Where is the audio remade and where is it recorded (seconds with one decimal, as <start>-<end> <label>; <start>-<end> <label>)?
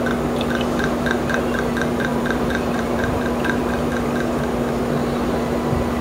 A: 0.0-2.1 recorded; 2.1-3.2 remade; 3.2-6.0 recorded